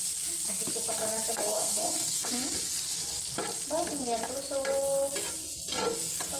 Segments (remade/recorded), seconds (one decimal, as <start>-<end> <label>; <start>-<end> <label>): 0.0-1.3 recorded; 1.3-2.3 remade; 2.3-6.4 recorded